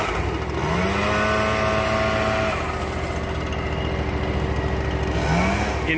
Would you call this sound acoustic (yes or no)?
yes